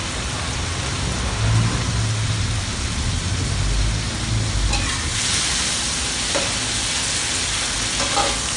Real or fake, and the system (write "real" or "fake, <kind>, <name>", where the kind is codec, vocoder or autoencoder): real